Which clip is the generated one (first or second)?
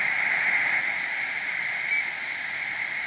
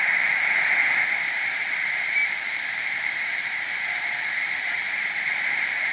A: second